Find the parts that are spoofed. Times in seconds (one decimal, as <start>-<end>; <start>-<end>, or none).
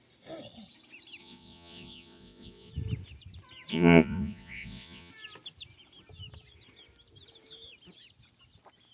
1.2-2.7; 3.7-5.1